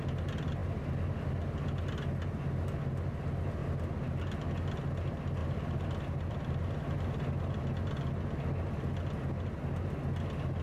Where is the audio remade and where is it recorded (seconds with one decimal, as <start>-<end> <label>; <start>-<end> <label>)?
0.0-3.6 recorded; 3.6-4.2 remade; 4.2-5.4 recorded; 5.4-7.6 remade; 7.6-10.6 recorded